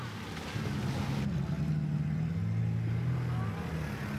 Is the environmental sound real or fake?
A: real